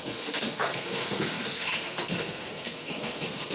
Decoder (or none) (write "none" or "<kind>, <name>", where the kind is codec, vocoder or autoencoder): codec, SNAC